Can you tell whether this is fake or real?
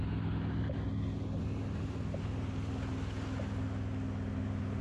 real